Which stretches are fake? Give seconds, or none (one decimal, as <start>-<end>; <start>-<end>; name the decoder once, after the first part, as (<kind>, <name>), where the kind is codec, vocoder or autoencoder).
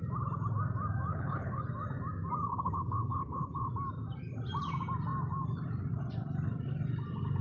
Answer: 1.1-1.6 (codec, HILCodec); 2.5-3.7